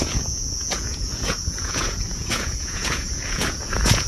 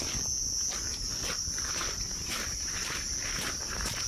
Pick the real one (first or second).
second